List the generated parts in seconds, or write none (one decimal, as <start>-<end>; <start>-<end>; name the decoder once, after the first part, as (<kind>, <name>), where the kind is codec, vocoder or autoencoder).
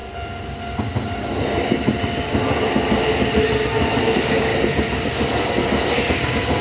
4.0-4.5 (codec, DAC); 6.0-6.6